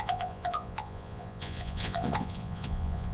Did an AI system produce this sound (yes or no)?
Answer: yes